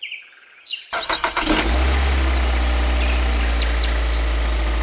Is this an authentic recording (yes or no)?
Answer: yes